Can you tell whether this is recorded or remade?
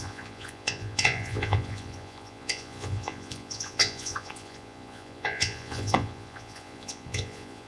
remade